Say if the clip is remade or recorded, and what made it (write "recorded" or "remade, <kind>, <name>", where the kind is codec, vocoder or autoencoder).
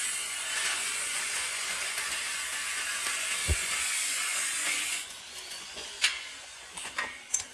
remade, vocoder, Vocos